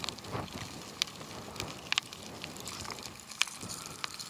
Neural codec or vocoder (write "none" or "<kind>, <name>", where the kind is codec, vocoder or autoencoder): none